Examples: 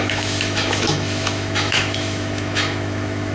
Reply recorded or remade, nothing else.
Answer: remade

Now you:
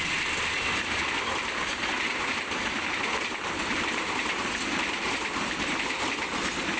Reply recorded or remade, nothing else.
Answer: recorded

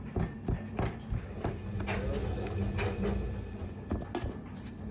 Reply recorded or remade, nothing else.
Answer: recorded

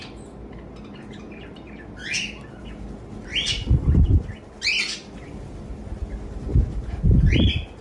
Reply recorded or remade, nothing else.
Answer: recorded